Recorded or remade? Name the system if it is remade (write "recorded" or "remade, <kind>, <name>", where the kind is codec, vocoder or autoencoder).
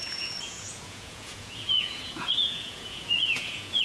remade, vocoder, Vocos